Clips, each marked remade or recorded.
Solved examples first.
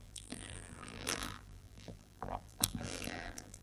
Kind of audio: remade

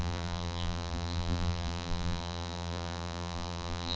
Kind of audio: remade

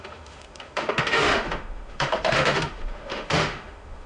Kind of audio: remade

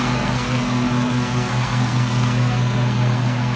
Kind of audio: remade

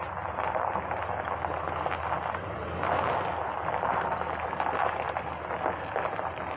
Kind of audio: recorded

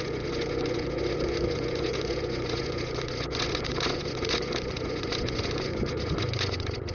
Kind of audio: remade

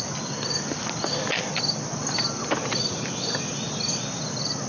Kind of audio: recorded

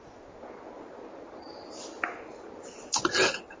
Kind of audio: recorded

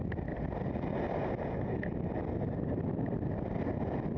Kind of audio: recorded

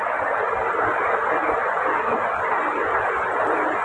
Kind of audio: recorded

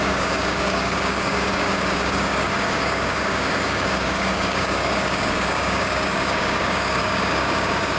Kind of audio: remade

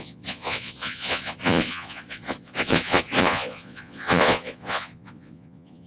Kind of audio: remade